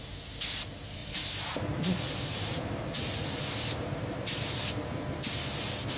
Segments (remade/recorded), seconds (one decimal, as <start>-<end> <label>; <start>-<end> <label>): 0.0-1.0 recorded; 1.0-4.6 remade; 4.6-6.0 recorded

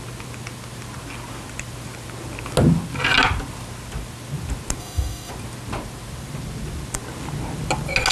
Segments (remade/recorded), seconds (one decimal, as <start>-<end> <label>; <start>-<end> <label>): 0.0-4.8 recorded; 4.8-5.3 remade; 5.3-8.1 recorded

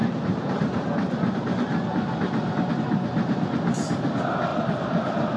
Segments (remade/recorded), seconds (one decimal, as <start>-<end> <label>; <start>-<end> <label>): 0.0-2.7 remade; 2.7-4.5 recorded; 4.5-5.4 remade